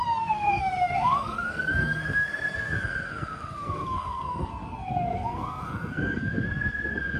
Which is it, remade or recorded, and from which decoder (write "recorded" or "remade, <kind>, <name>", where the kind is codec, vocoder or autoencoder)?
remade, codec, SNAC